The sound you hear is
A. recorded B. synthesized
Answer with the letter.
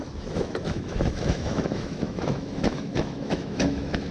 B